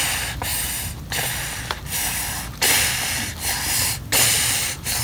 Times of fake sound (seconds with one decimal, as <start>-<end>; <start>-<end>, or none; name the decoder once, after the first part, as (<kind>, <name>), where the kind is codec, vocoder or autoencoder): none